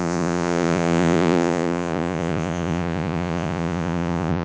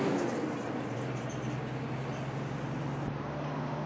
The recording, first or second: second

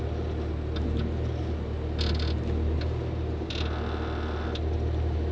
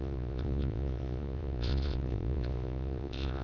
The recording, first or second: first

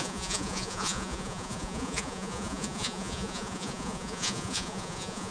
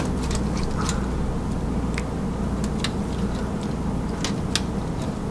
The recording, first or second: second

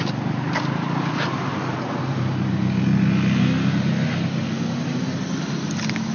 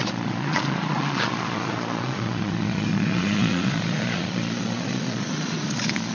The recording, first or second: first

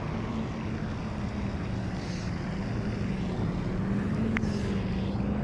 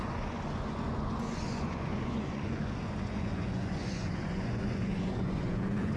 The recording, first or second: first